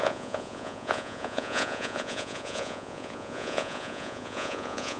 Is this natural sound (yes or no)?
no